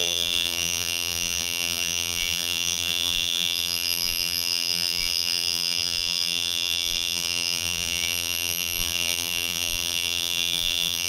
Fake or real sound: fake